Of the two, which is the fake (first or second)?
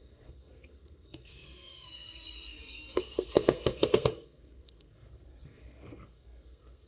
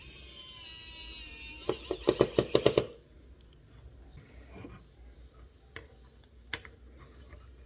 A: first